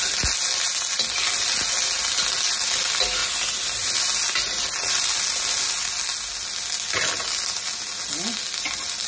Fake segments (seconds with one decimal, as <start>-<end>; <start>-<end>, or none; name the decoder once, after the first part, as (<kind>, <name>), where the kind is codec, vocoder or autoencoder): none